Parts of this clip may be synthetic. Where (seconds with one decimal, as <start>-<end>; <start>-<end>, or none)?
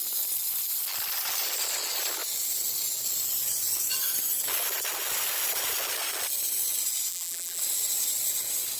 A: 7.1-7.6